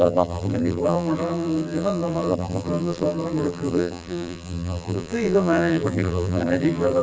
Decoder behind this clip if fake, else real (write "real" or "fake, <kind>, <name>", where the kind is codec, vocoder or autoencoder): fake, vocoder, BigVGAN v2